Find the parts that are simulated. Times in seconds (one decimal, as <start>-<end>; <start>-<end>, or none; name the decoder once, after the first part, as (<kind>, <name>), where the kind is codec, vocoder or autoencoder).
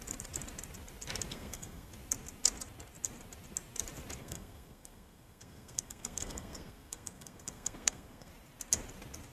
1.3-1.9 (codec, SNAC); 4.2-8.3